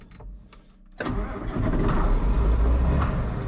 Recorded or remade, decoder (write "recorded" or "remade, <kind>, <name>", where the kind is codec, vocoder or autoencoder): recorded